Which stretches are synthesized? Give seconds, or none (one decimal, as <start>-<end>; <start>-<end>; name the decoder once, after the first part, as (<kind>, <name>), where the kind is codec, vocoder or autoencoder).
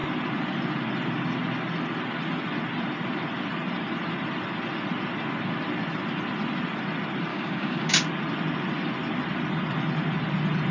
7.3-7.9 (codec, DAC)